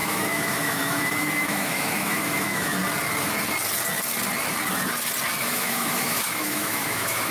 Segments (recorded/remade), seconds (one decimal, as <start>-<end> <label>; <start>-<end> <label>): 0.0-2.8 remade; 2.8-5.4 recorded; 5.4-7.3 remade